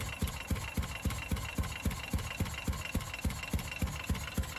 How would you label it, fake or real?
fake